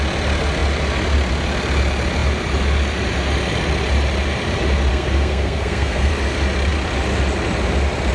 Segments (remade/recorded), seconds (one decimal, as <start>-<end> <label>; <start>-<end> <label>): 0.0-4.9 recorded; 4.9-6.1 remade; 6.1-8.1 recorded